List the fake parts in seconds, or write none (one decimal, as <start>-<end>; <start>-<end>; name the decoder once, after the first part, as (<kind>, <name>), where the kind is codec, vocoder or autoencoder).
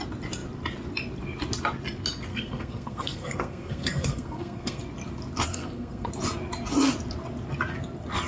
2.3-4.8 (codec, SNAC); 5.5-6.1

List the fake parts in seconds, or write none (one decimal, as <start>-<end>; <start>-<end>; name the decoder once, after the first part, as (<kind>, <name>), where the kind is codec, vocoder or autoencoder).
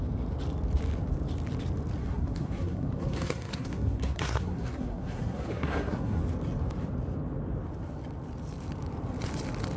2.0-6.2 (codec, SNAC)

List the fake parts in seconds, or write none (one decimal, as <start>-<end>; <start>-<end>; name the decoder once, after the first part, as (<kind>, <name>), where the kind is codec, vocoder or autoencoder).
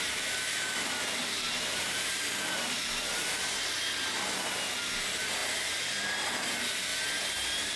0.0-2.8 (vocoder, BigVGAN v2); 5.0-5.4; 6.0-6.9